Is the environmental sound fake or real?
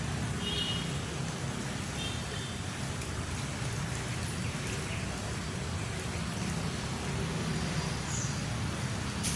real